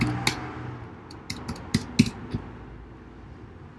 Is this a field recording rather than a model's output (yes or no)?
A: yes